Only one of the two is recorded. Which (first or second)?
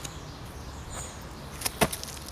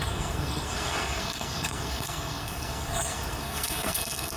first